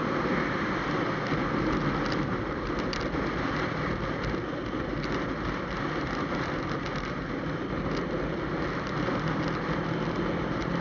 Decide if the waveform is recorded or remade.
recorded